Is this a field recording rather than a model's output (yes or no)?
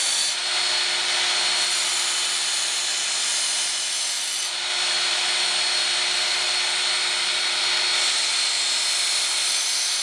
yes